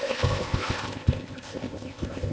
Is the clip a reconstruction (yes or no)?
yes